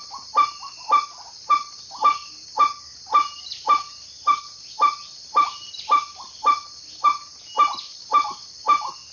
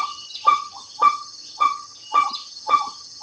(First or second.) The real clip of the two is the first